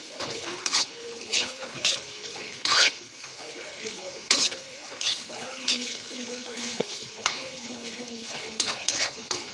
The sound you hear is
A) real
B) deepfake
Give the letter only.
B